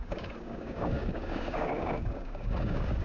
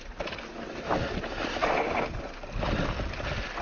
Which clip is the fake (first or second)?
first